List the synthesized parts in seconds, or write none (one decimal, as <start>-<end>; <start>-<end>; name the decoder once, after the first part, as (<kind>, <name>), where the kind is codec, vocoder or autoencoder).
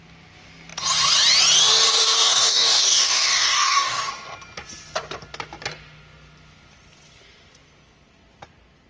1.9-4.1 (codec, DAC)